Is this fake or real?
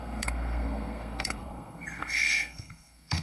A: fake